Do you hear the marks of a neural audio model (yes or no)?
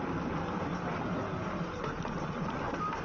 no